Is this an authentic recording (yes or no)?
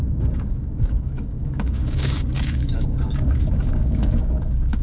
no